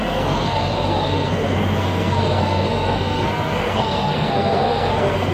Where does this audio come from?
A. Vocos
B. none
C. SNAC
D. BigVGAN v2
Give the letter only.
C